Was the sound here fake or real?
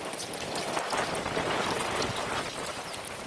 real